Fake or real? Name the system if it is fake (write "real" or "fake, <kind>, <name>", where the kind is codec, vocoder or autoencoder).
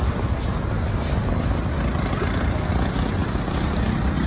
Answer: real